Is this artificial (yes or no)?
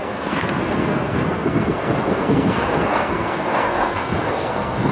yes